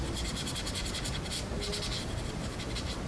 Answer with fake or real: real